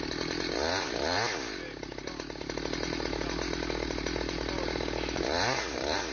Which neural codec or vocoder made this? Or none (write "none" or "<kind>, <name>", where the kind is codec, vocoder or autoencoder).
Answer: none